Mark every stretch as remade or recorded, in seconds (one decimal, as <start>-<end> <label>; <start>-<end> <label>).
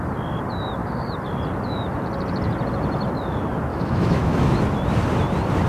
0.0-3.7 recorded; 3.7-4.6 remade; 4.6-5.7 recorded